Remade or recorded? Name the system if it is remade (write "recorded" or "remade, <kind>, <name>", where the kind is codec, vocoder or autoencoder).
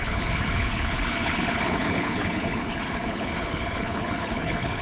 remade, codec, HILCodec